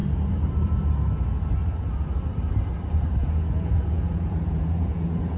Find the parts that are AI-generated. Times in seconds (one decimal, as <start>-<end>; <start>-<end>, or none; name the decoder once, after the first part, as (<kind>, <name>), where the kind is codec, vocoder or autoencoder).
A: 3.2-5.4 (vocoder, Vocos)